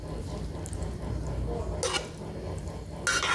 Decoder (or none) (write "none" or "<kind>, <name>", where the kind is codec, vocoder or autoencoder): none